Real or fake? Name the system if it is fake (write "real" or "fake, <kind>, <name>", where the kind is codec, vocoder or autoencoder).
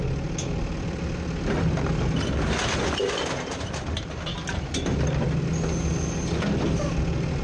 real